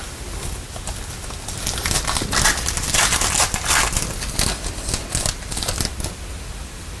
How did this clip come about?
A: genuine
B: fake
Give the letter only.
A